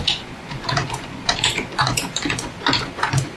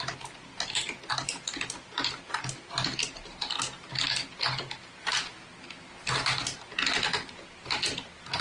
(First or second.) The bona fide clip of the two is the second